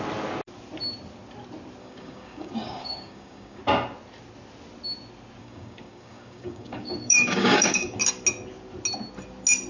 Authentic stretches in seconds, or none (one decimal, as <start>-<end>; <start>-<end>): 0.0-1.8; 3.6-5.4; 8.0-9.7